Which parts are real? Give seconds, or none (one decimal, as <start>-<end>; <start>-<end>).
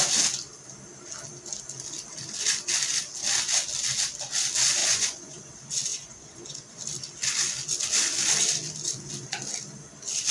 0.0-4.8; 5.4-5.9; 6.8-10.3